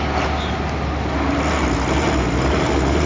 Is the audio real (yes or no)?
yes